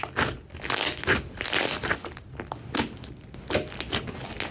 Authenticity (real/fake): real